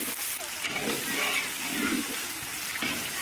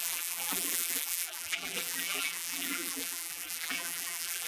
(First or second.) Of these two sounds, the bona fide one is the first